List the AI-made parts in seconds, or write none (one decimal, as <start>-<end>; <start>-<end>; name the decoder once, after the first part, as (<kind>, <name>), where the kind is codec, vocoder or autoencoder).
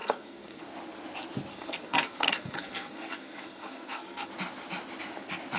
0.0-0.6 (codec, SNAC); 1.5-4.3